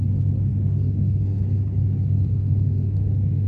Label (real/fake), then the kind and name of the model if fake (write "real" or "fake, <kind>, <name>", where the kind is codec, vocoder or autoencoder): fake, codec, SNAC